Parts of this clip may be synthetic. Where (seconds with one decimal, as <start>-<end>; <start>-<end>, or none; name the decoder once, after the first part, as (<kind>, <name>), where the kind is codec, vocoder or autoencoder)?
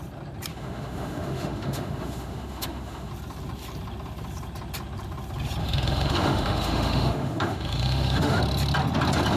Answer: 0.5-3.1 (autoencoder, DAC-VAE); 5.6-8.4